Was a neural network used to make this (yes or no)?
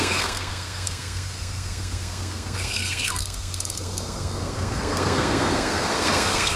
yes